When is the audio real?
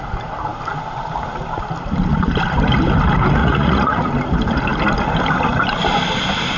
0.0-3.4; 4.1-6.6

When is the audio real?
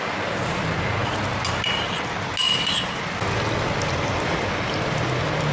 0.0-5.5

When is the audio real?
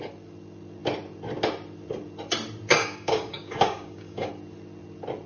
0.0-2.7; 4.3-5.3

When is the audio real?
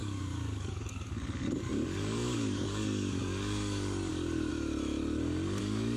4.5-5.6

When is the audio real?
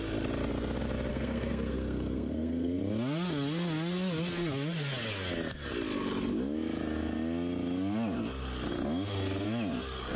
0.0-1.1; 2.8-10.2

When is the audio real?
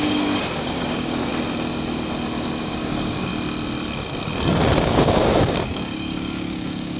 1.3-2.6; 3.3-4.8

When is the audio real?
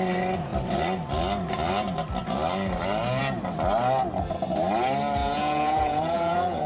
0.0-5.2